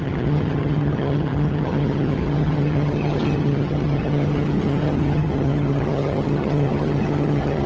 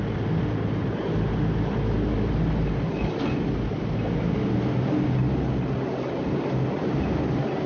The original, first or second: second